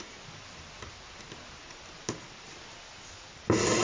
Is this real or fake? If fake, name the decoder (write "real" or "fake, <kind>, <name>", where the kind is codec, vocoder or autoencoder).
real